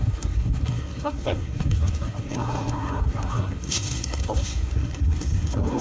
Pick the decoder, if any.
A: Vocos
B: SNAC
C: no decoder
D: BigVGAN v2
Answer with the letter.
B